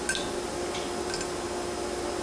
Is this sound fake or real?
real